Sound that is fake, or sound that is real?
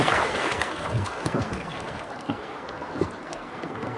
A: fake